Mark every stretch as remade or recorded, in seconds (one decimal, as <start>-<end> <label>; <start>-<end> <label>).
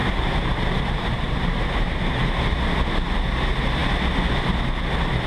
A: 0.0-2.4 remade; 2.4-5.3 recorded